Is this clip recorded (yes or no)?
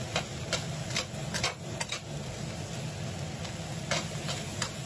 yes